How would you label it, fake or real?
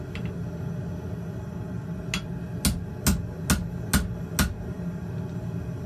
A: real